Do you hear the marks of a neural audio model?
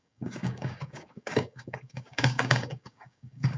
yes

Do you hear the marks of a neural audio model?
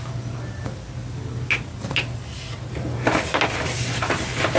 no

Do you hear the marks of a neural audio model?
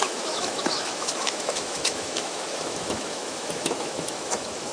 yes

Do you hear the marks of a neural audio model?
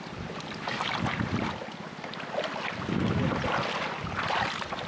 no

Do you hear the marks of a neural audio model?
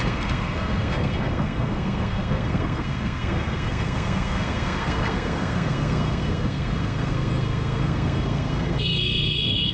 yes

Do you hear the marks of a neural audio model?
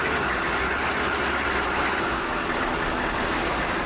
no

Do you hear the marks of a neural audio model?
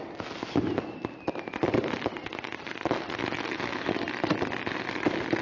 no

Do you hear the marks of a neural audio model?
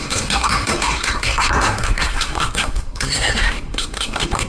yes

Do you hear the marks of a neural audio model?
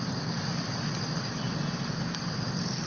no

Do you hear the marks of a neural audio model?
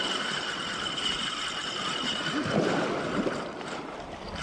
no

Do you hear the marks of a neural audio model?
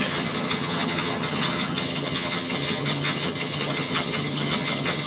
yes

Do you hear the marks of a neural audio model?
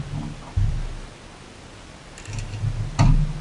no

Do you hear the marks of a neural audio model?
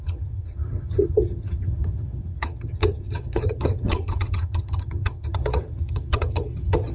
yes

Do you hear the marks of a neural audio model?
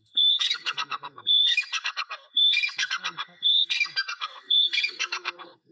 yes